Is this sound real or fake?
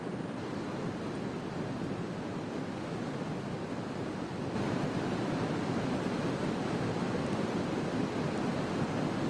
real